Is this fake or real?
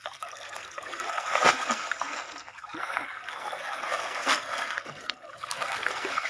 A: fake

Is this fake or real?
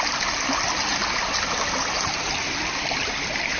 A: real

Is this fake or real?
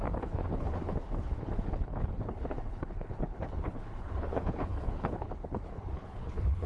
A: fake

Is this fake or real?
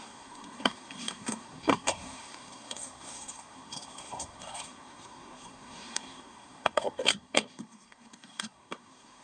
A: fake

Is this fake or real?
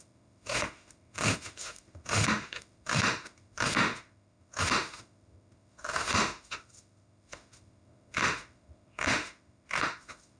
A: fake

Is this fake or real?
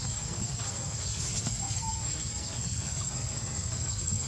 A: fake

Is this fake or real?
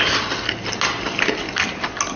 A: real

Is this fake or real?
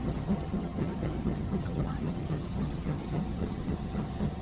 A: fake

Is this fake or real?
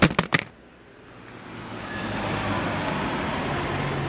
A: real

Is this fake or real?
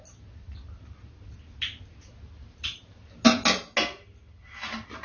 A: real